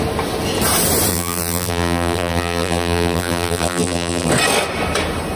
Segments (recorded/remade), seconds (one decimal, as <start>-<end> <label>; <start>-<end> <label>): 0.0-1.1 recorded; 1.1-4.3 remade; 4.3-5.4 recorded